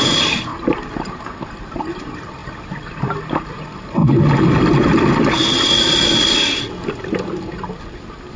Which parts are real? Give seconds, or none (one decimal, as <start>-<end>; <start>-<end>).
0.5-1.5; 2.4-3.4; 4.0-8.4